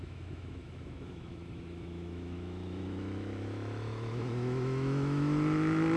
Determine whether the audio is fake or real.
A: fake